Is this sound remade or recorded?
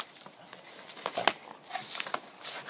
recorded